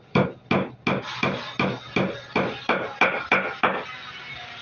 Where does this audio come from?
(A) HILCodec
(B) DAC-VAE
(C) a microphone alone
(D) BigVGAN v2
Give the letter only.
C